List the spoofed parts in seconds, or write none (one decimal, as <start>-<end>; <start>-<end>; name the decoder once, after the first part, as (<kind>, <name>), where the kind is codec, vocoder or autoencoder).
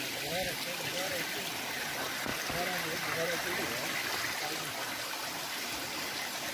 none